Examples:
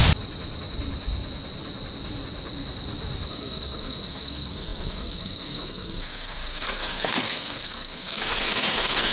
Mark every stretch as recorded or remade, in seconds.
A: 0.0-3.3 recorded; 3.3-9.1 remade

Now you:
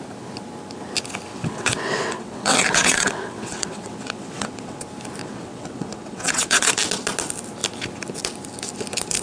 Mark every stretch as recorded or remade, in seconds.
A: 0.0-1.3 recorded; 1.3-4.8 remade; 4.8-5.2 recorded; 5.2-6.7 remade; 6.7-9.2 recorded

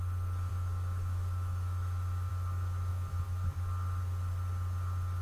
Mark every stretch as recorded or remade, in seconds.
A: 0.0-0.5 recorded; 0.5-2.3 remade; 2.3-2.9 recorded; 2.9-3.5 remade; 3.5-5.2 recorded

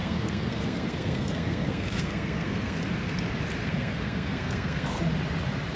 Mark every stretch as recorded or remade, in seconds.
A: 0.0-2.9 remade; 2.9-3.6 recorded; 3.6-5.0 remade; 5.0-5.8 recorded